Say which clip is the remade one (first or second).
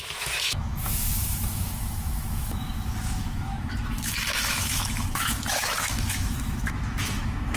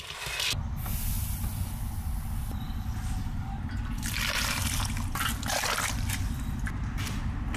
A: first